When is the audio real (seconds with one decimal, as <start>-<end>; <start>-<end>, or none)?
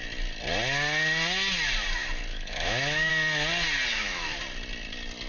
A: 0.0-2.3; 3.1-3.9; 4.4-5.3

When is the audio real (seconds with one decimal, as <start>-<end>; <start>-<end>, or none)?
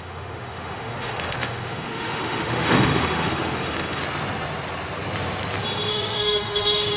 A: 4.0-5.9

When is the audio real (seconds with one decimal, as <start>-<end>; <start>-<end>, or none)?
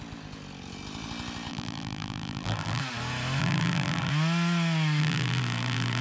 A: 0.0-1.5; 2.8-3.4; 4.1-5.0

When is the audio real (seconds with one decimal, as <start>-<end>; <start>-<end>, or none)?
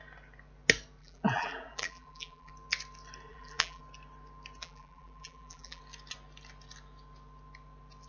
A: 0.0-1.0; 2.5-3.3; 3.8-4.6; 5.8-8.1